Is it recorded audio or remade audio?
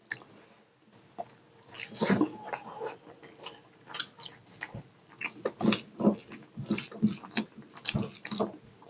recorded